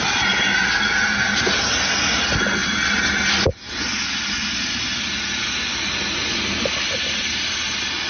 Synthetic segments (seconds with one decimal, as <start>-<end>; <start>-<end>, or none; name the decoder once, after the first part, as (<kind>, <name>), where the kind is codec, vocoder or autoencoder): none